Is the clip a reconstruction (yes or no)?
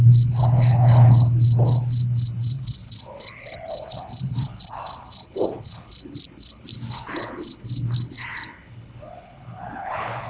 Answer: yes